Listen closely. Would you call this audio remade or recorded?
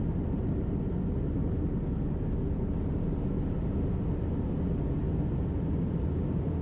recorded